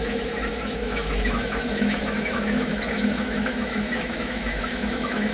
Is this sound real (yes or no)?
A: no